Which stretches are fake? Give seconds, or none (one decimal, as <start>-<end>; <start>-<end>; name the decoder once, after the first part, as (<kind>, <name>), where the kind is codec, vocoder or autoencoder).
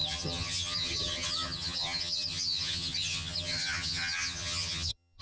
0.0-5.2 (vocoder, HiFi-GAN)